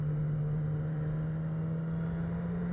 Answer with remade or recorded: recorded